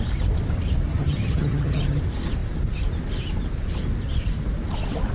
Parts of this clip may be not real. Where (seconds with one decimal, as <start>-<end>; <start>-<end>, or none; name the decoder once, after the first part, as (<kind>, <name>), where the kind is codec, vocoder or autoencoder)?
0.9-2.0 (vocoder, HiFi-GAN)